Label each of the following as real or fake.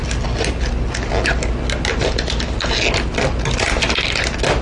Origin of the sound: real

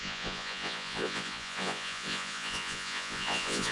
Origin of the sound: fake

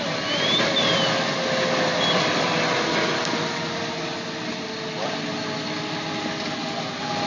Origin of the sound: real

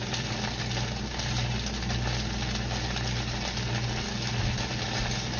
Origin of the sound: real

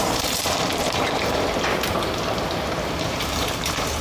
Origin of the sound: fake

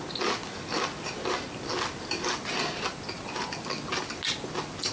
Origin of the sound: real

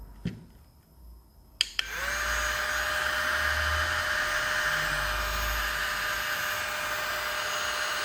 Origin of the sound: real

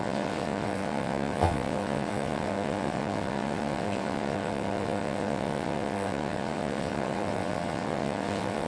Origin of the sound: fake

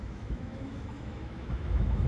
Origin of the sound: fake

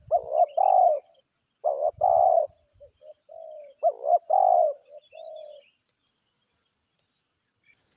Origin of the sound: real